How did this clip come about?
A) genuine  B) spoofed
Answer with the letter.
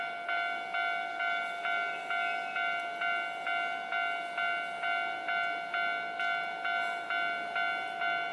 A